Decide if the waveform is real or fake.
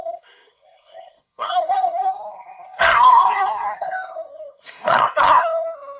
fake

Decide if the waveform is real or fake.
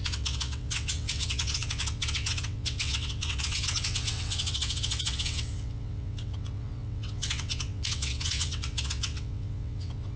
fake